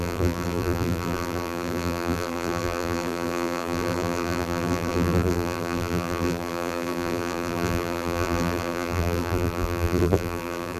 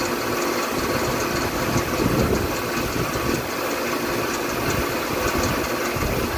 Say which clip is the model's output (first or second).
first